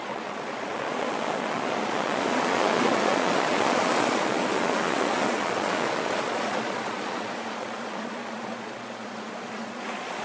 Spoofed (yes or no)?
yes